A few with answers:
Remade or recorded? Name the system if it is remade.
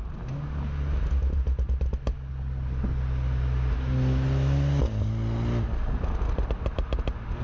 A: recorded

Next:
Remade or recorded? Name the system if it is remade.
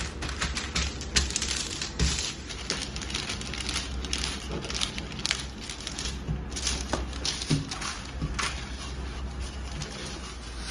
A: recorded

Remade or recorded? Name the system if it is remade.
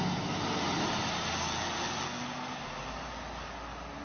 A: recorded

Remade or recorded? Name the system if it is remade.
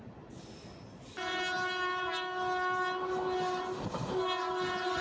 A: recorded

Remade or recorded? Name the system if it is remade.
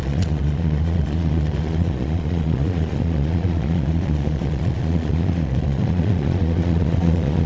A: remade, vocoder, Vocos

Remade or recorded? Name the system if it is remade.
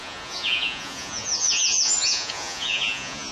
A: remade, vocoder, Vocos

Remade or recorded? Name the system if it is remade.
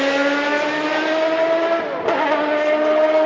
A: recorded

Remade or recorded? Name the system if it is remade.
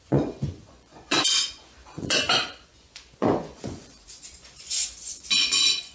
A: remade, vocoder, Vocos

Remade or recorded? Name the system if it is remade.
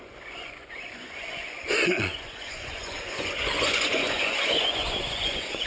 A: remade, vocoder, Vocos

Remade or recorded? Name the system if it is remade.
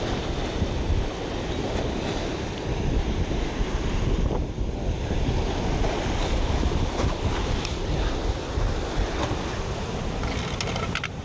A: recorded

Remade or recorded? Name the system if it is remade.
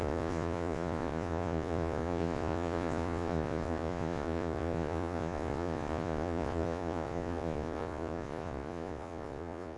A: remade, vocoder, Vocos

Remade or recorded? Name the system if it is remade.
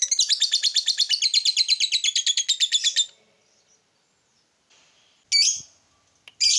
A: recorded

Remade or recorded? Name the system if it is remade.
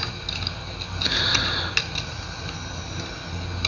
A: recorded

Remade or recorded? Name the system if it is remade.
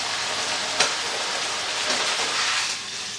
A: recorded